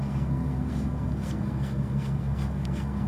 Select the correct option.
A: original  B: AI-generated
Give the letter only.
B